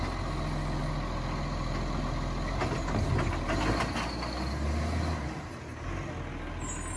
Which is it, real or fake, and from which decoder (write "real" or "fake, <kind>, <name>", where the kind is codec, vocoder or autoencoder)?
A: real